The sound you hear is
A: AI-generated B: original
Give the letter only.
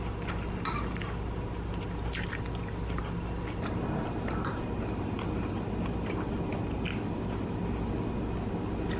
A